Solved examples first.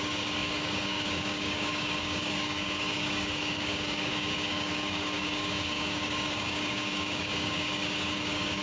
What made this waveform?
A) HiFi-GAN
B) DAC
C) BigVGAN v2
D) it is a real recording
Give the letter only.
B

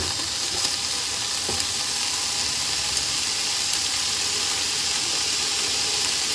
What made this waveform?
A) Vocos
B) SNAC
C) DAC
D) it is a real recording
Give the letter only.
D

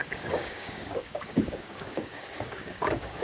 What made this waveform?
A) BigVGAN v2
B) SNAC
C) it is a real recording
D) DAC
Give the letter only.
D